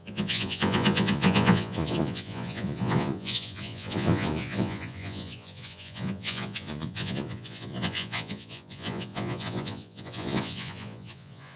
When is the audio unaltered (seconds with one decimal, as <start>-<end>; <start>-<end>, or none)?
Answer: none